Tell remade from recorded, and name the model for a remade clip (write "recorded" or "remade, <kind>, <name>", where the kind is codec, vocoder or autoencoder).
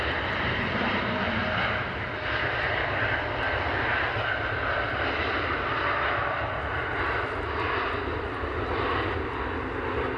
recorded